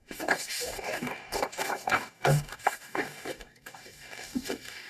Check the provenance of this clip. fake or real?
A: fake